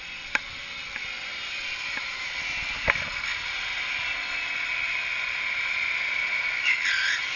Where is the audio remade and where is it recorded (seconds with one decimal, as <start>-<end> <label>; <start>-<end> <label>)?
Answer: 0.0-7.4 recorded